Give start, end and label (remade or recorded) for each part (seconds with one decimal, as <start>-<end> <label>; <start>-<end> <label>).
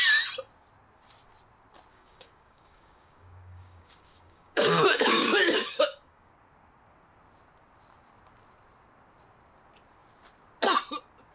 0.0-1.9 recorded; 1.9-6.3 remade; 6.3-11.3 recorded